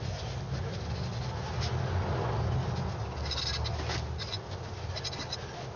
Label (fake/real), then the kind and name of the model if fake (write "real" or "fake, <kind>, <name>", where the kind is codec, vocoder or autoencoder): real